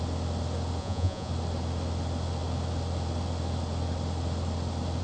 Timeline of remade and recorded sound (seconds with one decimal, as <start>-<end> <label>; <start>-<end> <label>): 0.0-0.8 recorded; 0.8-1.3 remade; 1.3-5.0 recorded